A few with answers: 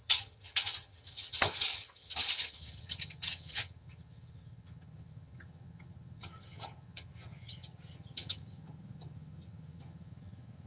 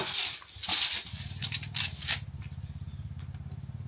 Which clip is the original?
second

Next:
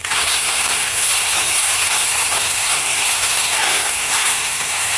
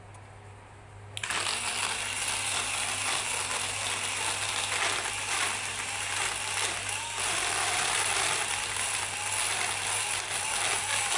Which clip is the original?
second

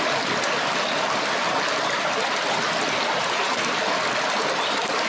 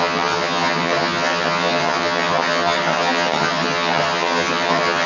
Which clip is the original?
first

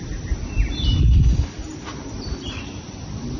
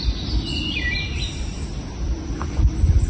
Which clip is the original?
second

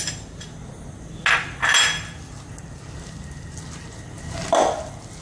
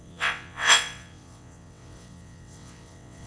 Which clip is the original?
first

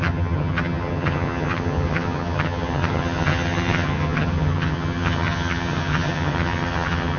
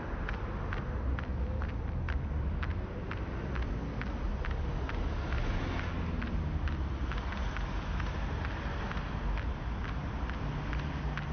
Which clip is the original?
second